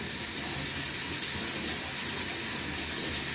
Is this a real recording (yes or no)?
yes